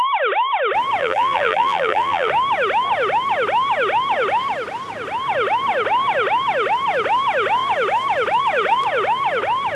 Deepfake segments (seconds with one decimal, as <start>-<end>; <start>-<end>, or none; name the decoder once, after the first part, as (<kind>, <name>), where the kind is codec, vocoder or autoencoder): 1.0-2.3 (vocoder, BigVGAN v2)